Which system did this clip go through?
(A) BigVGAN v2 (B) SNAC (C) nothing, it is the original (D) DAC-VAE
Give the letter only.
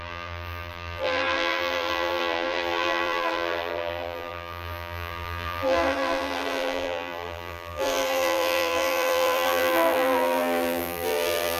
A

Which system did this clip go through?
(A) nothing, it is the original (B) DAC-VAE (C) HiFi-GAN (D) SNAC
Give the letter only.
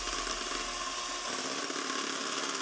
A